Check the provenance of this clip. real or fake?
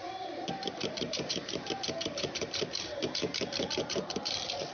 fake